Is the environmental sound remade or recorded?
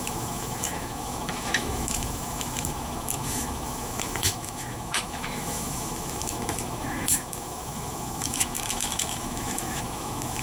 remade